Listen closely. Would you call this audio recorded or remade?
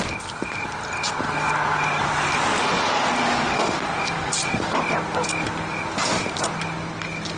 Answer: recorded